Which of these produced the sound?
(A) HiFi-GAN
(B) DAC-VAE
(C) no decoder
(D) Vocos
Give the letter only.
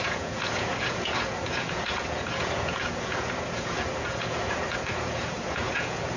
D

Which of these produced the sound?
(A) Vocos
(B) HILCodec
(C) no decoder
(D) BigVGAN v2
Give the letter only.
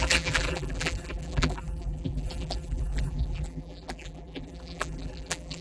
D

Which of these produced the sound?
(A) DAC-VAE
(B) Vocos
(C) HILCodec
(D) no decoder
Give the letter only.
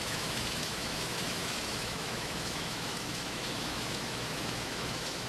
A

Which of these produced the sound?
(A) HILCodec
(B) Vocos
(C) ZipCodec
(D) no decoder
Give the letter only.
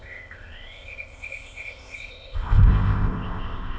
C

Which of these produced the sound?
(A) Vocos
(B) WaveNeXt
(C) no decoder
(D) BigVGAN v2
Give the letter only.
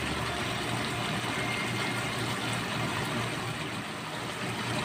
C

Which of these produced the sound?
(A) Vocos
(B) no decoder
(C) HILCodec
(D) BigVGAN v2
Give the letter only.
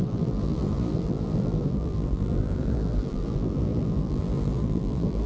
D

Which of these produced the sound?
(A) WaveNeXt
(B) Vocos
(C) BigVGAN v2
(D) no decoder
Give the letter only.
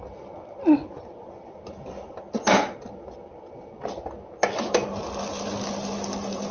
D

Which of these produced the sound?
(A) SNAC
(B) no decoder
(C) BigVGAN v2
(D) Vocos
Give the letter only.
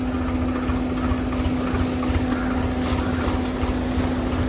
B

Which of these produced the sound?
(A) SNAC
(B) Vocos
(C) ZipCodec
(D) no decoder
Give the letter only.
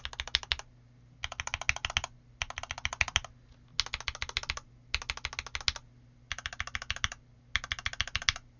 D